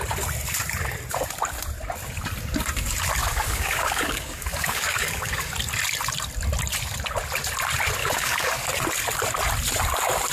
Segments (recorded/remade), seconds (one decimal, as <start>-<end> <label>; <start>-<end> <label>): 0.0-3.2 recorded; 3.2-5.5 remade; 5.5-8.0 recorded; 8.0-8.7 remade; 8.7-10.3 recorded